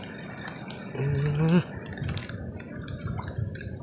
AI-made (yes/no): no